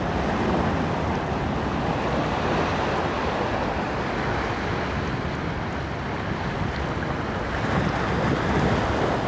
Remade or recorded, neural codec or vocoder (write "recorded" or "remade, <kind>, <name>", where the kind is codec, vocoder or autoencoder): recorded